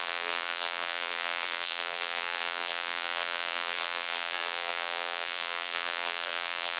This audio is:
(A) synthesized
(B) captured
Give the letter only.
A